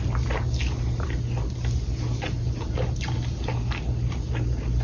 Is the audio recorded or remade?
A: recorded